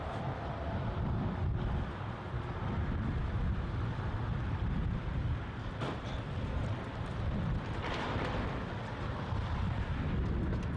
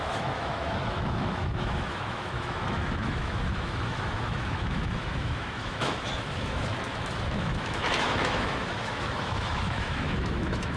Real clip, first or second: first